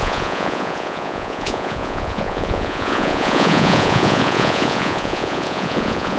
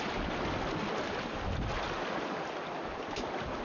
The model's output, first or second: first